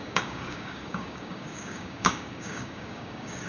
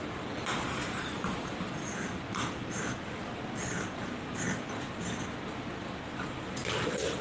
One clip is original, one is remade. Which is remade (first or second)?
first